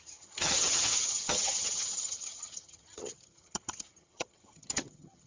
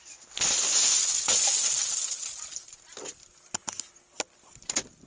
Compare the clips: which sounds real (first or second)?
second